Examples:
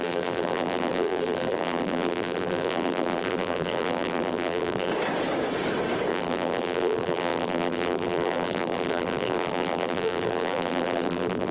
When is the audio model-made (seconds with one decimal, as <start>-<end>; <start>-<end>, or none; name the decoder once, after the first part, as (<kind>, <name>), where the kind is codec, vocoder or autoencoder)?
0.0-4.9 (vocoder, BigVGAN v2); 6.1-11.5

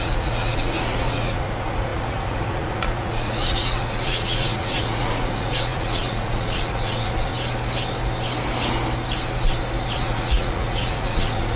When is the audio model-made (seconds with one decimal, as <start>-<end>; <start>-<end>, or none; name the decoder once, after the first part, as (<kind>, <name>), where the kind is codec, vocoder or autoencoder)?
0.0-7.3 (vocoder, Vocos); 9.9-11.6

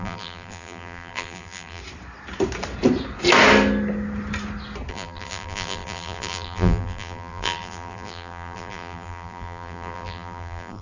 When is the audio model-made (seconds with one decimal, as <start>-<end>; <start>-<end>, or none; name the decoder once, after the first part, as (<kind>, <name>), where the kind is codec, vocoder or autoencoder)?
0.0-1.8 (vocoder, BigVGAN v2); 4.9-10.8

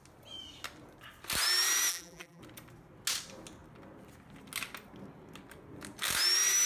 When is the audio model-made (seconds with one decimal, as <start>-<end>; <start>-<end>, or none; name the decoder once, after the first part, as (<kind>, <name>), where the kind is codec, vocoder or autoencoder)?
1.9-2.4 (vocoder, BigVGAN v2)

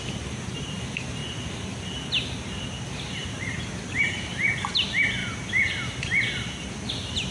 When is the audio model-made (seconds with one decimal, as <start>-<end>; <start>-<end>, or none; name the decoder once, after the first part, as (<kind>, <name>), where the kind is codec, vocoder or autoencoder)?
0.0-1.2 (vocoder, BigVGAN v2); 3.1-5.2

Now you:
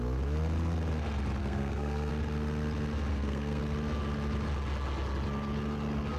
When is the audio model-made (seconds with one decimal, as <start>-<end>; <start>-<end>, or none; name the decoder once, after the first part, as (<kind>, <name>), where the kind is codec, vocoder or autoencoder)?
1.4-2.1 (codec, SNAC); 3.1-3.6

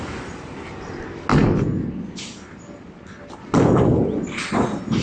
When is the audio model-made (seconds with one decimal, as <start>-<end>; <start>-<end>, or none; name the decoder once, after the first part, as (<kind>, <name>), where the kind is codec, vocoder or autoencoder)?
none

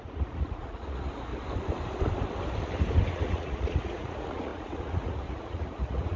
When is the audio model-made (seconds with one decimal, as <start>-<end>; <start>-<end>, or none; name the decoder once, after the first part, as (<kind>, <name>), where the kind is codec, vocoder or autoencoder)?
0.0-1.3 (vocoder, Vocos); 3.1-6.2